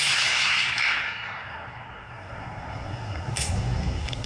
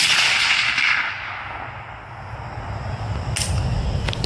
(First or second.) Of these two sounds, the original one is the second